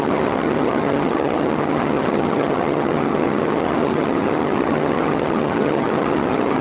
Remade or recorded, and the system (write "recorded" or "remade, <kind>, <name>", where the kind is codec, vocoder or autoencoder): remade, vocoder, HiFi-GAN